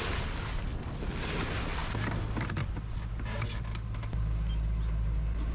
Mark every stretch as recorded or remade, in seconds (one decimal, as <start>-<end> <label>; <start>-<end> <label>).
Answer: 0.0-5.5 recorded